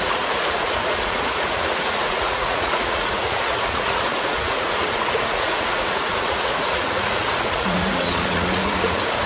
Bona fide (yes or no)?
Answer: no